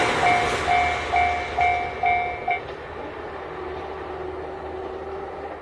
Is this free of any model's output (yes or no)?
yes